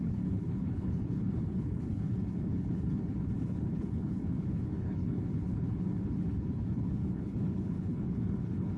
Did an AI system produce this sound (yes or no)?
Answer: yes